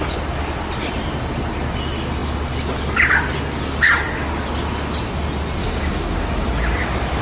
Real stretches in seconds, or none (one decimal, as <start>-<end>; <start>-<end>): 0.0-5.6; 6.5-7.2